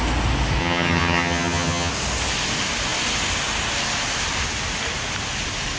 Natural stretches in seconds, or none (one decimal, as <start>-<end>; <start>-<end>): 0.0-0.6; 1.9-5.8